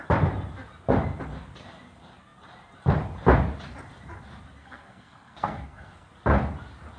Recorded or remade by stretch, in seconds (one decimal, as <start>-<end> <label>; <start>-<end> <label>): 0.0-4.6 recorded; 4.6-6.1 remade; 6.1-7.0 recorded

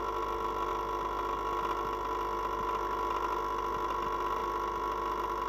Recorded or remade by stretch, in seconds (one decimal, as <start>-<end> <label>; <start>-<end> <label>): 0.0-5.5 recorded

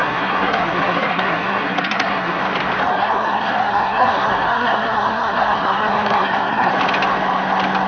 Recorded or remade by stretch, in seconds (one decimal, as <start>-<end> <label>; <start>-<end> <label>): 0.0-2.4 remade; 2.4-2.9 recorded; 2.9-6.7 remade; 6.7-7.9 recorded

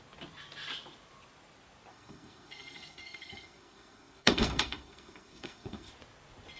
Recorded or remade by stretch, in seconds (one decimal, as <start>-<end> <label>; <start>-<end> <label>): 0.0-1.9 recorded; 1.9-5.9 remade; 5.9-6.6 recorded

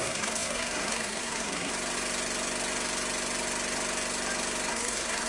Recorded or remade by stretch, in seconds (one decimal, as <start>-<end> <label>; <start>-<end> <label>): 0.0-1.7 remade; 1.7-4.7 recorded; 4.7-5.3 remade